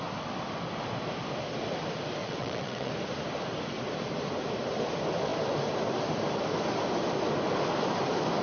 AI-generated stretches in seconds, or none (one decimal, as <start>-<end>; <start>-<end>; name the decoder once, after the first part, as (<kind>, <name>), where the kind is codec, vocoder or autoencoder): 2.2-2.9 (vocoder, WaveNeXt)